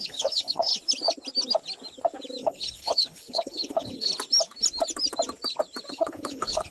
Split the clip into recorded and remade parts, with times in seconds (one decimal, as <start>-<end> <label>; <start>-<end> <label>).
0.0-0.7 remade; 0.7-2.4 recorded; 2.4-4.1 remade; 4.1-5.9 recorded; 5.9-6.7 remade